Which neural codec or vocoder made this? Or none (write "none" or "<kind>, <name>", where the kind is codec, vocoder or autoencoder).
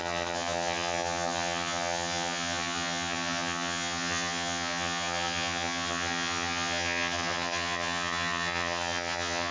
vocoder, HiFi-GAN